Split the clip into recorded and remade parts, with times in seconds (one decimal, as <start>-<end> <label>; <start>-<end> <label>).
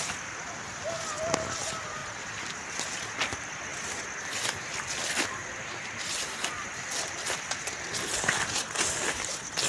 0.0-9.7 recorded